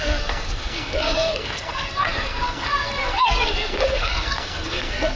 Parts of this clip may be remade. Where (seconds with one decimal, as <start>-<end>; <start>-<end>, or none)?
0.0-5.2